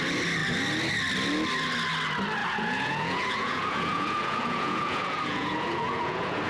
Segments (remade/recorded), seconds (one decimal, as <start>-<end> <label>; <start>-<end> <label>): 0.0-2.4 recorded; 2.4-6.5 remade